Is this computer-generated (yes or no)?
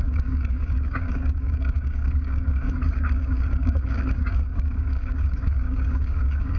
yes